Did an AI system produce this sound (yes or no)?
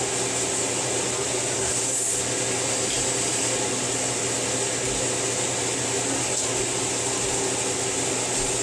no